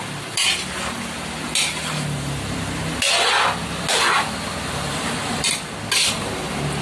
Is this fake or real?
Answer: real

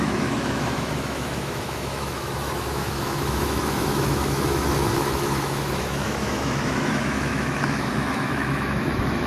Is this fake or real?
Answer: fake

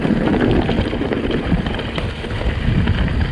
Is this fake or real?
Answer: real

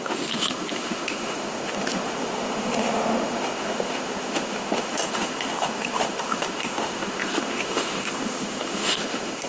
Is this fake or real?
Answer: fake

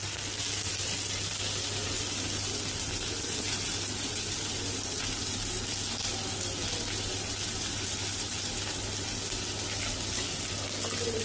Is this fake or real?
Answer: real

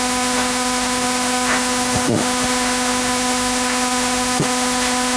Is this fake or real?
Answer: fake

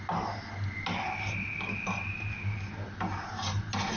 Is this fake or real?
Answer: real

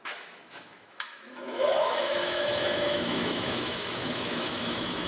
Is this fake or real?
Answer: fake